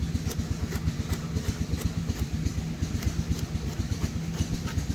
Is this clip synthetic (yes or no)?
no